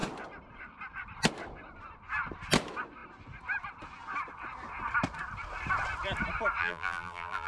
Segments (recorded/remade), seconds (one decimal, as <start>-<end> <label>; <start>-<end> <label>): 0.0-6.6 recorded; 6.6-7.5 remade